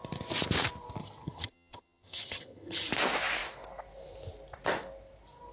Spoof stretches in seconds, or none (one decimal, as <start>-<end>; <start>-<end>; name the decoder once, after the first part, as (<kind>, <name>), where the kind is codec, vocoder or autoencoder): 1.0-2.9 (vocoder, HiFi-GAN)